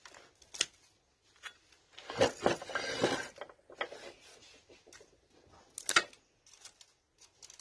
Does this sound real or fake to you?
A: real